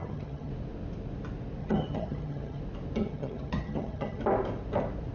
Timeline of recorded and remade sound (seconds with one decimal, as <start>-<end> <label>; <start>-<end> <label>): 0.0-0.5 remade; 0.5-1.6 recorded; 1.6-2.6 remade; 2.6-3.0 recorded; 3.0-4.2 remade; 4.2-5.1 recorded